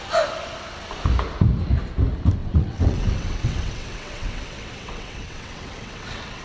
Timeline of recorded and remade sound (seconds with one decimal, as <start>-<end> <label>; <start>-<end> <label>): 0.0-2.4 recorded; 2.4-6.4 remade

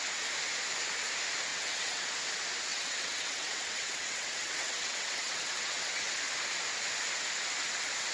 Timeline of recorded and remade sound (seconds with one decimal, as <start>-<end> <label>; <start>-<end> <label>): 0.0-1.5 recorded; 1.5-2.1 remade; 2.1-2.7 recorded; 2.7-6.1 remade; 6.1-8.1 recorded

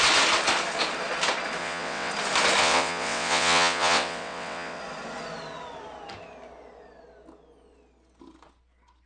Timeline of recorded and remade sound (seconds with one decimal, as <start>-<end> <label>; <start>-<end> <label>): 0.0-1.6 recorded; 1.6-2.1 remade; 2.1-2.6 recorded; 2.6-4.8 remade; 4.8-9.1 recorded

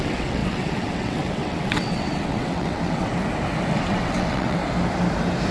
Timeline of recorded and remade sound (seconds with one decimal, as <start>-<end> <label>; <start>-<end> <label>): 0.0-3.1 remade; 3.1-3.7 recorded; 3.7-4.6 remade; 4.6-5.5 recorded

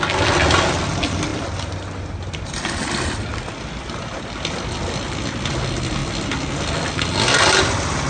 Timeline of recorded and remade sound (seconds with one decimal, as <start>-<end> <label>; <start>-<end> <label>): 0.0-8.1 recorded

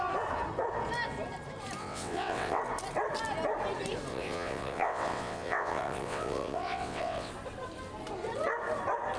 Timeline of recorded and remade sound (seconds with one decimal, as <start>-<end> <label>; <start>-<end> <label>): 0.0-1.8 recorded; 1.8-2.6 remade; 2.6-4.1 recorded; 4.1-7.3 remade; 7.3-9.2 recorded

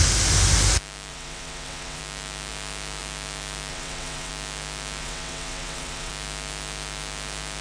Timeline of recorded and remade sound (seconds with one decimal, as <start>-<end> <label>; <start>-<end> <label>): 0.0-1.1 recorded; 1.1-2.0 remade; 2.0-3.7 recorded; 3.7-4.3 remade; 4.3-5.0 recorded; 5.0-6.1 remade; 6.1-7.6 recorded

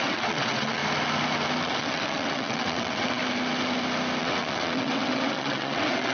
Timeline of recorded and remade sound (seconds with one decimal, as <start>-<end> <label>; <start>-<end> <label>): 0.0-0.8 remade; 0.8-1.6 recorded; 1.6-3.2 remade; 3.2-4.2 recorded; 4.2-6.1 remade